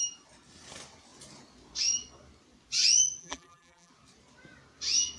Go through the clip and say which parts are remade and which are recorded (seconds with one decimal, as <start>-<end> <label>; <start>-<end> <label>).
0.0-3.2 recorded; 3.2-3.9 remade; 3.9-5.2 recorded